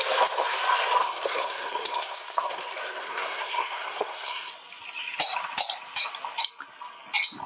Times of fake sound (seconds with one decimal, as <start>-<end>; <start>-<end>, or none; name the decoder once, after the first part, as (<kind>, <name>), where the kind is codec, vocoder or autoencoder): 1.0-2.6 (codec, SNAC); 3.0-4.5